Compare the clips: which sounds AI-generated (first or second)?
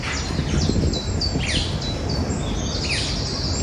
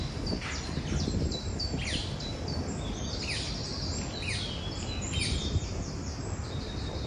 second